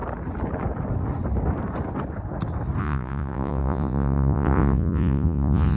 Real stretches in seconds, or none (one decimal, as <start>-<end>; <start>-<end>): 0.0-2.8